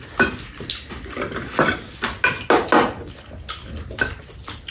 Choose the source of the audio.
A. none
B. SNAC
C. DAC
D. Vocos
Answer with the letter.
A